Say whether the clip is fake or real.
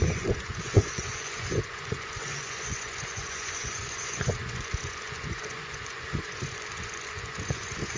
fake